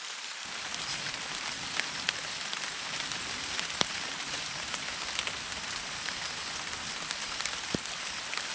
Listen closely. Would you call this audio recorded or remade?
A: recorded